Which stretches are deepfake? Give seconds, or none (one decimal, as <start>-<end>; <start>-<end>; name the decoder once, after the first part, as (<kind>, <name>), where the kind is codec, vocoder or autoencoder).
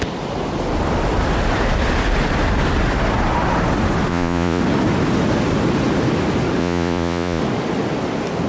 4.1-4.6 (vocoder, Vocos); 6.6-7.4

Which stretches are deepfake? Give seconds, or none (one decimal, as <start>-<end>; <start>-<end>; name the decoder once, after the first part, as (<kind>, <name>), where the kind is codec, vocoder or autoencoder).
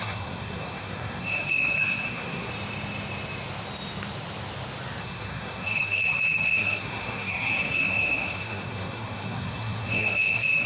0.0-2.5 (codec, SNAC); 5.0-10.7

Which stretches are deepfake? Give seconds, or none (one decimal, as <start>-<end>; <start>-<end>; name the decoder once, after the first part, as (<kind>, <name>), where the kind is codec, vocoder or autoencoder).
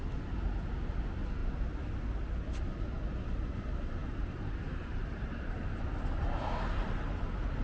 4.0-5.8 (vocoder, BigVGAN v2)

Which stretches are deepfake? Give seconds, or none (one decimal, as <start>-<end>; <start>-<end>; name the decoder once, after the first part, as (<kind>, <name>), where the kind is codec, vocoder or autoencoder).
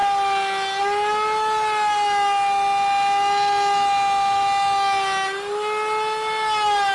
none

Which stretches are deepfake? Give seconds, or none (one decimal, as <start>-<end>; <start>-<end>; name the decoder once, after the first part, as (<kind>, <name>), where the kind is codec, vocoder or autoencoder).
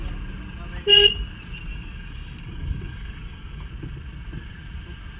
1.7-3.7 (codec, DAC)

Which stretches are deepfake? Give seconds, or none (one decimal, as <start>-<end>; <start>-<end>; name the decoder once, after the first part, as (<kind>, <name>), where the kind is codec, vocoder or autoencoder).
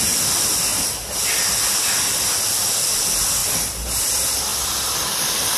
3.4-4.0 (vocoder, BigVGAN v2); 4.5-5.6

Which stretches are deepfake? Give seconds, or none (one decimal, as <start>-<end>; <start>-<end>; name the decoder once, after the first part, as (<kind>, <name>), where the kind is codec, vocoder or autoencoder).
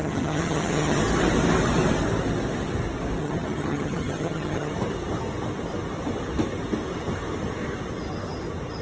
0.0-1.0 (vocoder, HiFi-GAN); 3.2-4.7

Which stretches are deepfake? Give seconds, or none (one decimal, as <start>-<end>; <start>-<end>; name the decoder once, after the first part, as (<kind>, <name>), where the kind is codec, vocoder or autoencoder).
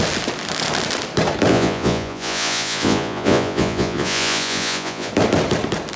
1.5-5.1 (vocoder, Vocos)